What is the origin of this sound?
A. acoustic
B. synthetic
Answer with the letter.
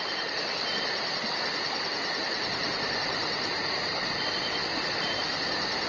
A